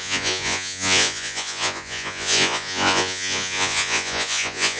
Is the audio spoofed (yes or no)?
yes